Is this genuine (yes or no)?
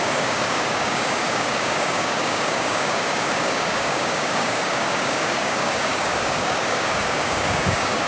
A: no